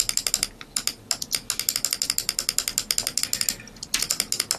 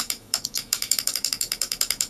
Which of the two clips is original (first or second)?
first